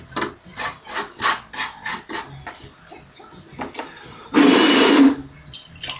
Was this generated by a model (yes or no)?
no